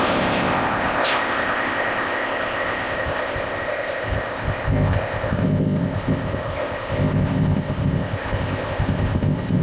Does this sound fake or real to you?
fake